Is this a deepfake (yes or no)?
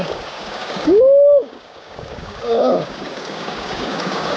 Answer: yes